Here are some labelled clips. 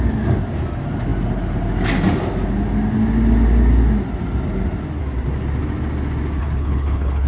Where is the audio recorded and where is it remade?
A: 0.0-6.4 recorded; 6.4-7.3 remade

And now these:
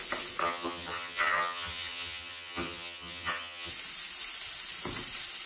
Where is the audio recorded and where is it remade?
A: 0.0-0.4 recorded; 0.4-3.7 remade; 3.7-5.5 recorded

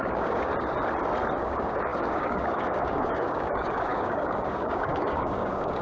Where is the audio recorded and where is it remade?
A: 0.0-0.5 remade; 0.5-1.4 recorded; 1.4-5.8 remade

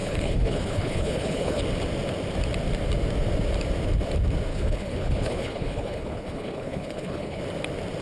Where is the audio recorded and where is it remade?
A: 0.0-1.6 remade; 1.6-4.5 recorded; 4.5-7.4 remade; 7.4-8.0 recorded

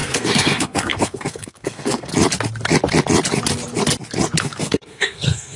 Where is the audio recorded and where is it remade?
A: 0.0-2.1 remade; 2.1-4.4 recorded; 4.4-5.6 remade

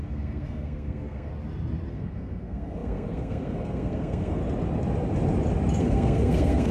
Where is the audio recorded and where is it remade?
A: 0.0-1.3 remade; 1.3-1.9 recorded; 1.9-4.4 remade; 4.4-5.8 recorded; 5.8-6.7 remade

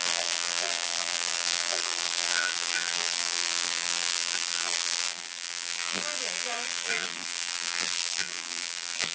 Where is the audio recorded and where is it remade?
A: 0.0-9.1 remade